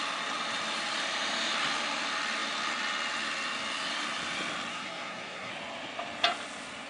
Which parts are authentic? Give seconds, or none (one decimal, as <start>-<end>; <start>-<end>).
0.0-4.7; 5.5-6.9